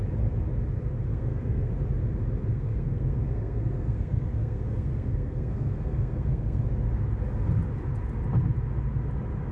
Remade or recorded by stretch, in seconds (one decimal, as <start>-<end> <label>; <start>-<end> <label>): 0.0-1.1 recorded; 1.1-1.7 remade; 1.7-2.5 recorded; 2.5-6.6 remade; 6.6-9.5 recorded